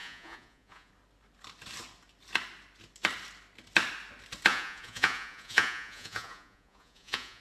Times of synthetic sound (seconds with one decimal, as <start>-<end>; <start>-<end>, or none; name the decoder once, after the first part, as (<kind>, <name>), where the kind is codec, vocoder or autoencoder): 0.0-0.9 (vocoder, Vocos); 4.5-7.4